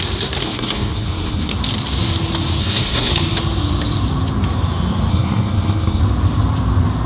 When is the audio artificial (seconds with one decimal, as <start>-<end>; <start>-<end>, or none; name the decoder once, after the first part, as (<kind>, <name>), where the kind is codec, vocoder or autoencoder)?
0.4-1.5 (codec, SNAC); 2.6-3.1; 5.1-6.0